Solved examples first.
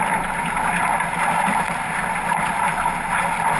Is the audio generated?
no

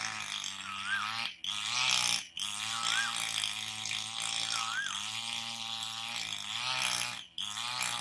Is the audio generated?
no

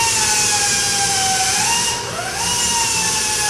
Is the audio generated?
no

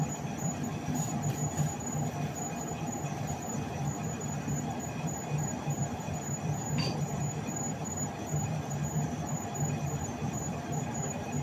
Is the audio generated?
yes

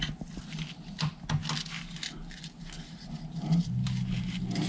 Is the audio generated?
no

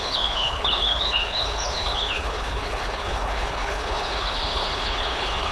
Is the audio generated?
yes